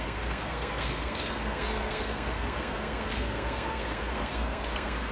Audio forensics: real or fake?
fake